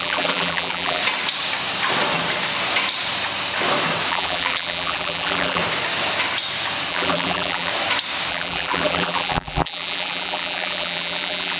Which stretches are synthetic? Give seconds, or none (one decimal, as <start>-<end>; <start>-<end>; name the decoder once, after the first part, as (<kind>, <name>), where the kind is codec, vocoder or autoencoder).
0.0-1.0 (vocoder, BigVGAN v2); 4.1-5.6; 6.9-7.7; 8.3-11.6